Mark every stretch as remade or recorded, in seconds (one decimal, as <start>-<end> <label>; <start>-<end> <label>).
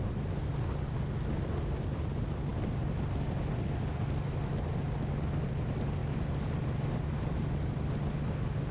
0.0-8.7 recorded